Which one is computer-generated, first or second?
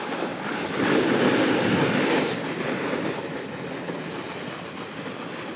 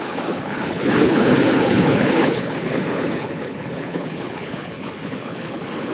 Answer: second